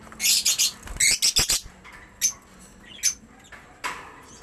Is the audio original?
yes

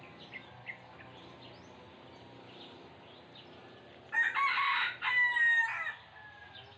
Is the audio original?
yes